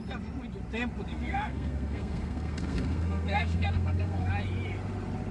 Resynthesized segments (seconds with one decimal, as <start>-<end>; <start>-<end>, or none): 1.1-4.3